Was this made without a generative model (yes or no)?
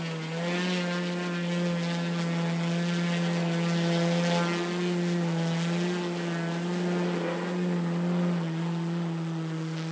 yes